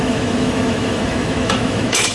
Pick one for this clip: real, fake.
fake